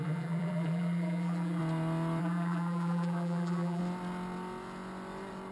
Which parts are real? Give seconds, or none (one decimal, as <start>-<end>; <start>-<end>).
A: 1.6-2.2; 3.8-5.5